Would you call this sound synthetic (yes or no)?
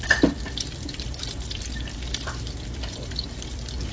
yes